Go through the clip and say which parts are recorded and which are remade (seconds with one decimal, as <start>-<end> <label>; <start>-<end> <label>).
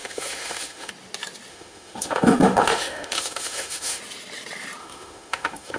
0.0-0.9 remade; 0.9-1.5 recorded; 1.5-4.0 remade; 4.0-4.8 recorded; 4.8-5.8 remade